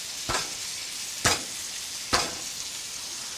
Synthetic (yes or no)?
no